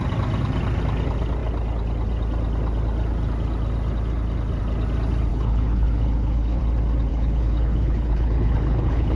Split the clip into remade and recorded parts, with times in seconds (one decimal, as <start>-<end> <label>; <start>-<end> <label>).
0.0-5.3 recorded; 5.3-6.6 remade; 6.6-7.1 recorded; 7.1-9.2 remade